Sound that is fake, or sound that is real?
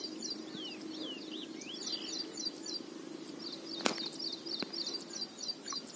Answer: real